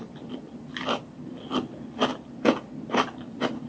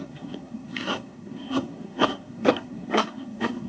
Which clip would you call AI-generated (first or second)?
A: second